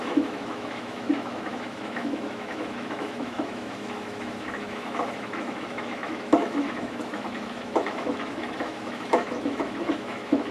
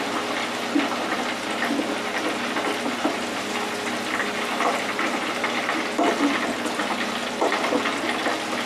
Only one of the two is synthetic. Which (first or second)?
first